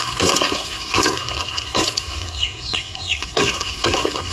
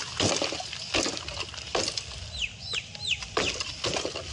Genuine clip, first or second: second